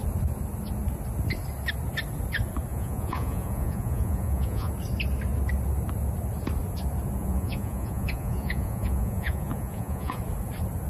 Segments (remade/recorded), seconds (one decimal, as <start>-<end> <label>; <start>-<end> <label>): 0.0-2.7 recorded; 2.7-4.7 remade; 4.7-7.2 recorded; 7.2-10.2 remade; 10.2-10.9 recorded